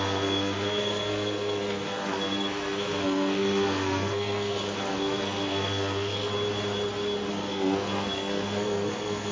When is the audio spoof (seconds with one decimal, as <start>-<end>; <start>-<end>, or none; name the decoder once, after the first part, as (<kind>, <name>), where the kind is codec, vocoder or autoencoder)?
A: 0.0-6.3 (codec, SNAC); 7.3-9.3